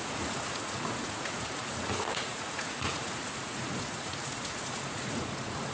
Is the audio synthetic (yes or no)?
yes